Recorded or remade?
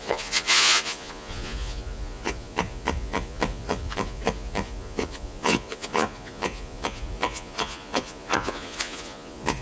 remade